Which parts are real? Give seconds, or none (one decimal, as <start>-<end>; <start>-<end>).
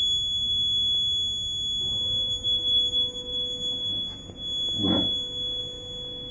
0.0-6.3